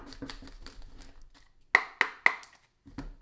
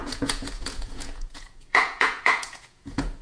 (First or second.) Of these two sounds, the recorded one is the first